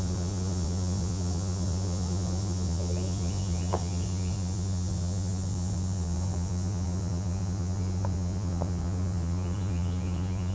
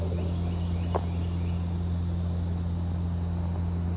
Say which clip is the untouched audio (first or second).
second